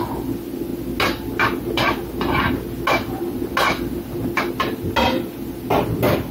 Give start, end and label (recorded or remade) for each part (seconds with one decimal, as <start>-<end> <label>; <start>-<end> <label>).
0.0-6.3 recorded